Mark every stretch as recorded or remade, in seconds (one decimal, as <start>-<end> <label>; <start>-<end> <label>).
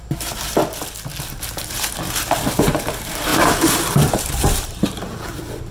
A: 0.0-0.6 remade; 0.6-1.3 recorded; 1.3-5.7 remade